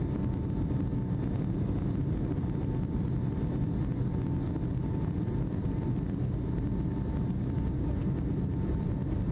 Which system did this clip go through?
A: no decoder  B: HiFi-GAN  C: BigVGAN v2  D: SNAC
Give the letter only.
A